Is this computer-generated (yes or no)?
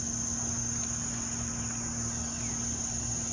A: no